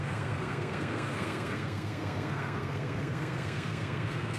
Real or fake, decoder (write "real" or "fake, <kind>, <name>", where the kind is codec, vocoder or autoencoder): fake, codec, SNAC